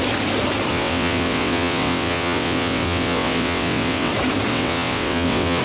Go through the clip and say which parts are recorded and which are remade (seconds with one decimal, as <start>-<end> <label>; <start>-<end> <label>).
0.0-0.7 recorded; 0.7-4.1 remade; 4.1-4.5 recorded; 4.5-5.6 remade